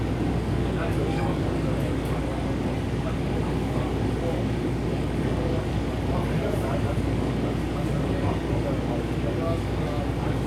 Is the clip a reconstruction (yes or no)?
yes